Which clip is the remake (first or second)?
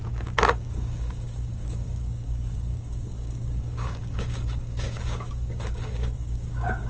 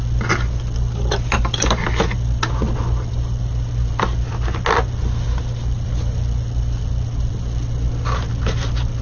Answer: first